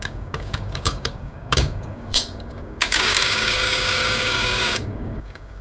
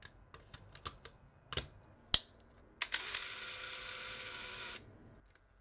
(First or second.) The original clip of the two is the second